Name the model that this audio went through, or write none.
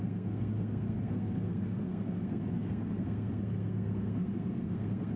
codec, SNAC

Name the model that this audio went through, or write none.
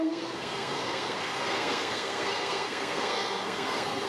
codec, SNAC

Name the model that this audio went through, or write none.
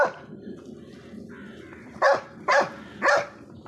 none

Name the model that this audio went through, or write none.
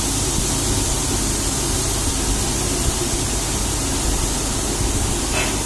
none